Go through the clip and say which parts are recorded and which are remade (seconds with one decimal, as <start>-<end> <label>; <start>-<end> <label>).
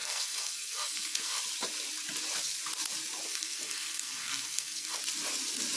0.0-1.4 remade; 1.4-3.3 recorded; 3.3-5.0 remade; 5.0-5.8 recorded